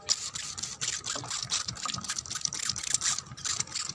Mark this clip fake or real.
real